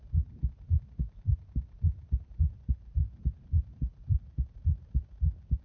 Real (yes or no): yes